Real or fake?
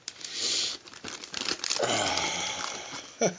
fake